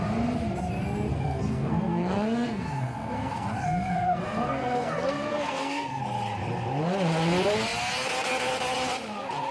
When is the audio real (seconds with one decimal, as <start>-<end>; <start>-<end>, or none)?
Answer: 0.0-1.1; 6.0-9.5